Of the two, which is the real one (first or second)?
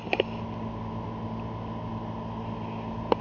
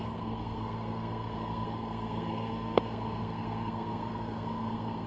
first